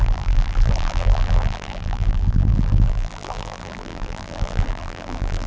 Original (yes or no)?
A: no